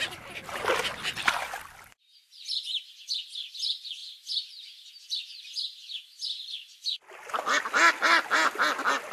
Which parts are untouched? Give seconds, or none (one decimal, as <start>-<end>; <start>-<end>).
0.0-9.1